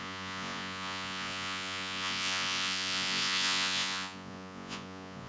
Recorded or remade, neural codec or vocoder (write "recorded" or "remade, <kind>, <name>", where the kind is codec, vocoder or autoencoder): remade, vocoder, Vocos